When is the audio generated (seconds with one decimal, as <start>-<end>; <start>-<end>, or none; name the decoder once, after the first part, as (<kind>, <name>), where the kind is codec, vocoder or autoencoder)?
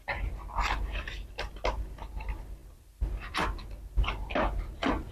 none